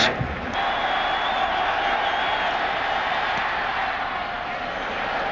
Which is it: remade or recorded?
recorded